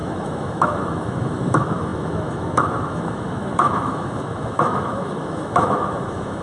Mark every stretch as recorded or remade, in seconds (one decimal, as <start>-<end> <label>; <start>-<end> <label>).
0.0-6.4 remade